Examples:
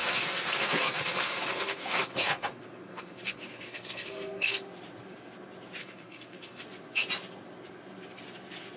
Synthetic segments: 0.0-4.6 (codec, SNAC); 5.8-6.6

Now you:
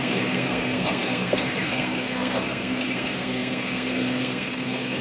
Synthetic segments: 0.0-5.0 (codec, SNAC)

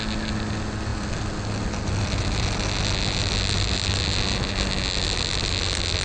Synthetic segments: none

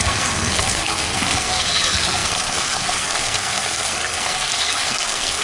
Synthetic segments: 0.0-5.4 (codec, SNAC)

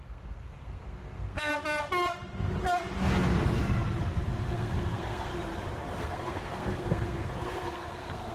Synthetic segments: 0.0-1.5 (codec, SNAC); 4.5-5.3; 6.0-8.3

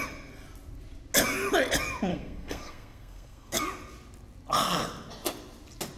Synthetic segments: 2.1-3.6 (codec, SNAC)

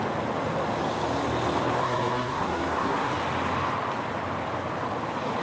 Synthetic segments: 1.8-3.1 (codec, SNAC)

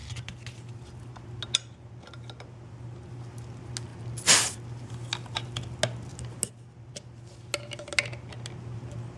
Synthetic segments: none